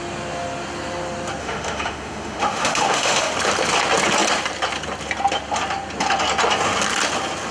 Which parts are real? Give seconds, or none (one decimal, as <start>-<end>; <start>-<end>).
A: 0.0-1.4; 3.3-7.5